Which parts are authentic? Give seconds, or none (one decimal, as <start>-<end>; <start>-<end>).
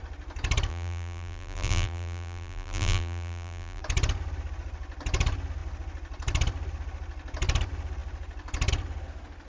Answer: 0.0-0.7; 3.8-9.5